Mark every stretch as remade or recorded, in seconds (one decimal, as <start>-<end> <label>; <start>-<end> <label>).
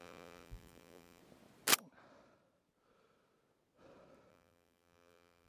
0.0-1.2 remade; 1.2-4.3 recorded; 4.3-5.5 remade